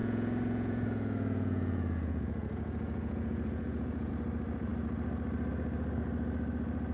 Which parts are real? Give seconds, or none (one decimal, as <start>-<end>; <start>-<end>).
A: 4.1-6.9